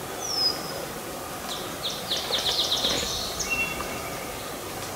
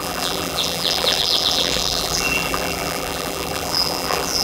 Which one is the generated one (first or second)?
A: second